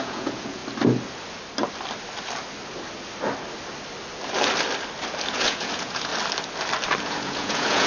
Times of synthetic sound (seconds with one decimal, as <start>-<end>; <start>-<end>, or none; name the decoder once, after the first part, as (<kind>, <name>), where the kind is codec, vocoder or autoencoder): 0.0-0.6 (vocoder, Vocos); 5.3-6.1; 7.0-7.9